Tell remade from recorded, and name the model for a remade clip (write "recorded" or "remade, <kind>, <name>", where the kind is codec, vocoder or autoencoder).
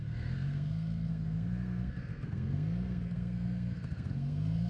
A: remade, codec, SNAC